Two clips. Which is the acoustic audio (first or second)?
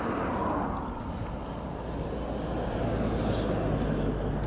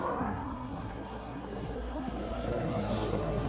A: first